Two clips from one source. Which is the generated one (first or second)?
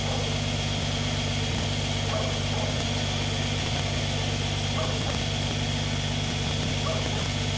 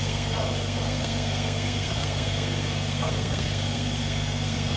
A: second